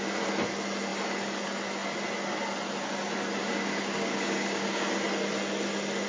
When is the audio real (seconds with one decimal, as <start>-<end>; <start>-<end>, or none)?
0.0-3.4; 4.9-6.1